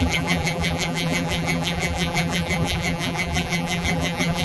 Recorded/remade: remade